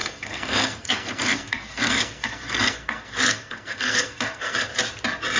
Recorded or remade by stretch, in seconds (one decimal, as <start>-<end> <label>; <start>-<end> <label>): 0.0-4.7 remade; 4.7-5.4 recorded